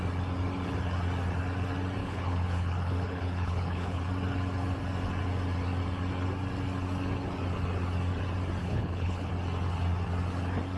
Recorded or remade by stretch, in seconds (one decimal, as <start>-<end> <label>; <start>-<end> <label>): 0.0-2.0 recorded; 2.0-4.0 remade; 4.0-8.6 recorded; 8.6-9.3 remade; 9.3-10.8 recorded